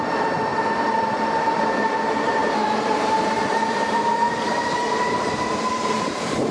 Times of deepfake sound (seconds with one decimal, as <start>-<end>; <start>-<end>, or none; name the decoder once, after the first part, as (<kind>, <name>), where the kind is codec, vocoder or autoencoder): 0.0-6.5 (vocoder, BigVGAN v2)